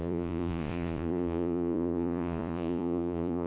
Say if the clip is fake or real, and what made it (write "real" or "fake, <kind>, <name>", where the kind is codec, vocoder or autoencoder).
fake, vocoder, Vocos